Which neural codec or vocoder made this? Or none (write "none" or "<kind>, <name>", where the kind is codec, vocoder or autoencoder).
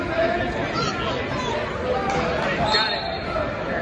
none